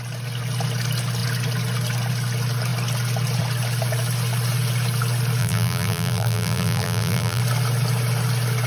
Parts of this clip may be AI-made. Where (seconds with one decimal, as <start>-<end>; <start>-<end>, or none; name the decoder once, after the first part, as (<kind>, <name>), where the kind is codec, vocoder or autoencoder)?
5.4-7.4 (vocoder, BigVGAN v2)